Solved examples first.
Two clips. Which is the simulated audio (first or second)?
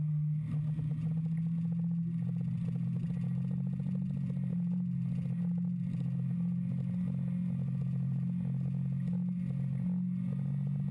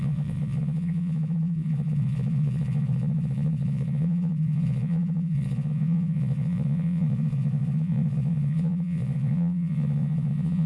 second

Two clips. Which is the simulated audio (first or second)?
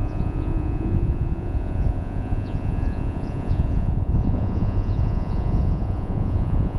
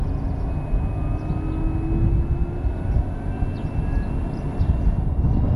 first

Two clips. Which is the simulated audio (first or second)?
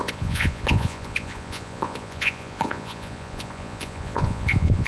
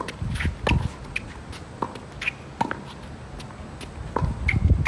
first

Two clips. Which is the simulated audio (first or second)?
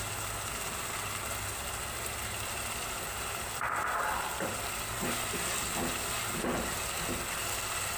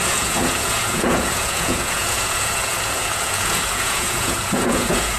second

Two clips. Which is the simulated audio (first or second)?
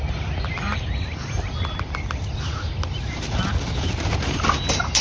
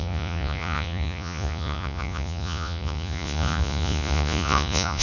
second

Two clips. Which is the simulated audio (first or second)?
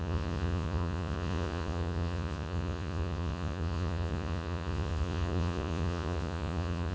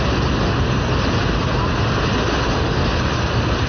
first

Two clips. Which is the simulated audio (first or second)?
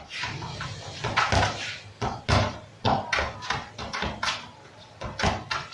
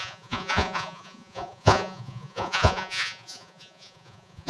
second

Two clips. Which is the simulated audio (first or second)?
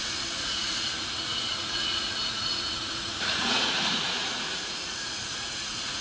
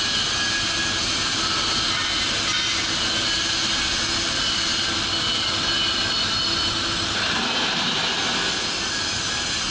first